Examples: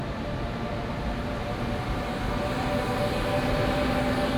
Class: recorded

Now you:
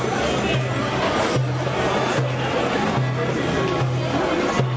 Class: recorded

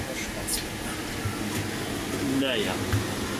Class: recorded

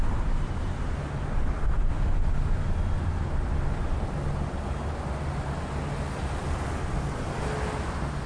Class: recorded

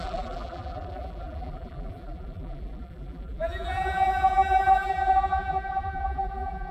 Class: remade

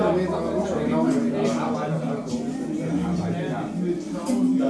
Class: recorded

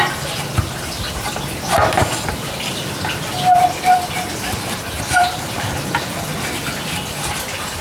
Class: recorded